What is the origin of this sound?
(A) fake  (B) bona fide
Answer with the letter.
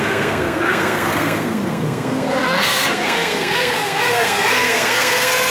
A